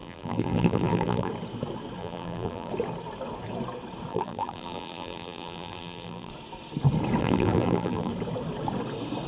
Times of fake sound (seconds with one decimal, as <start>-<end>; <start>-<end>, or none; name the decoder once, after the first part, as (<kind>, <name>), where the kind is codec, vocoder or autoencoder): 0.0-1.3 (vocoder, BigVGAN v2); 2.0-2.7; 4.1-6.3; 7.2-8.1